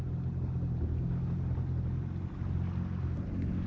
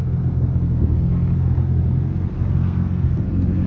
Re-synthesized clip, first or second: second